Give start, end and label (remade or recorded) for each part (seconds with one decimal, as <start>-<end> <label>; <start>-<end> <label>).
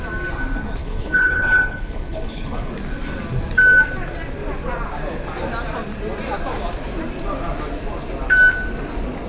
0.0-0.8 recorded; 0.8-2.7 remade; 2.7-9.3 recorded